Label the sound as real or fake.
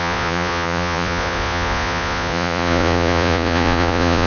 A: fake